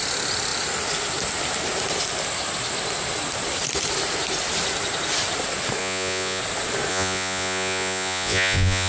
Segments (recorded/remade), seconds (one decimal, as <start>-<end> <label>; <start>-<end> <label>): 0.0-5.8 recorded; 5.8-6.4 remade; 6.4-6.9 recorded; 6.9-8.9 remade